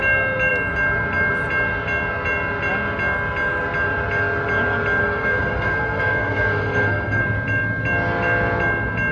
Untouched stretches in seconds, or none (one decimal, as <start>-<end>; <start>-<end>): 0.0-5.0; 7.2-9.1